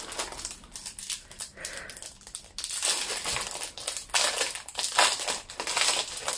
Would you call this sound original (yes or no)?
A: yes